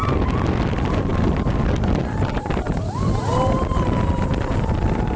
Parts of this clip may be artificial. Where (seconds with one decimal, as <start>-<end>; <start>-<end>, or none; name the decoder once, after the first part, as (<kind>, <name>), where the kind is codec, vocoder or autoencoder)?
none